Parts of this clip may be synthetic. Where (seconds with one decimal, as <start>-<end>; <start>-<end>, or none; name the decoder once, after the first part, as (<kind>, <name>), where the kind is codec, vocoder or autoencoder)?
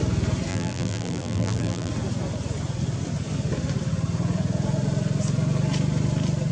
0.5-1.9 (vocoder, BigVGAN v2)